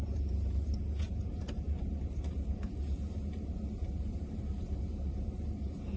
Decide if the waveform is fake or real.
fake